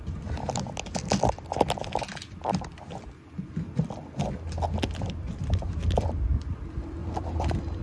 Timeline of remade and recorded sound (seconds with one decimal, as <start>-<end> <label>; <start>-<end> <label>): 0.0-7.8 recorded